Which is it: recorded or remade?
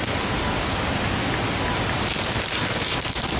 recorded